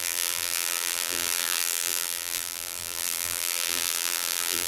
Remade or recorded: remade